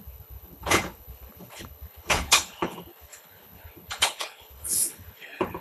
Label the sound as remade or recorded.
remade